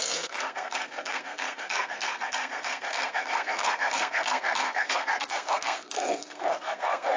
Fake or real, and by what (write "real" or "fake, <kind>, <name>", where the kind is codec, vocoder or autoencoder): fake, codec, SNAC